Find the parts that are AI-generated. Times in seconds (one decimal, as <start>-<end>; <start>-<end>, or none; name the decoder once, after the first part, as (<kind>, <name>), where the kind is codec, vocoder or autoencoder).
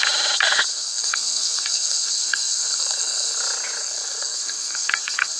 0.7-3.4 (codec, SNAC); 3.8-5.4